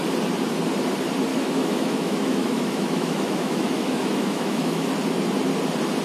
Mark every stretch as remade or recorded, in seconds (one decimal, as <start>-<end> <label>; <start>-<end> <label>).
0.0-1.3 recorded; 1.3-4.9 remade; 4.9-6.0 recorded